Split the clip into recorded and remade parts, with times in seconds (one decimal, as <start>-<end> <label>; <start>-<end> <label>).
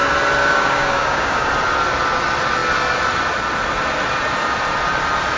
0.0-0.4 recorded; 0.4-1.5 remade; 1.5-5.4 recorded